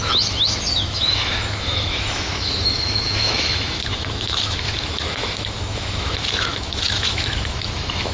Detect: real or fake fake